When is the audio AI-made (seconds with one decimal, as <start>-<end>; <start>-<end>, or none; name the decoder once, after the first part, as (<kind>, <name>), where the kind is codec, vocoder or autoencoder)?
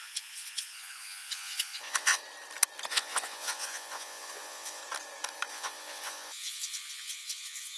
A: 0.0-2.2 (vocoder, Vocos); 2.9-4.8; 5.5-7.8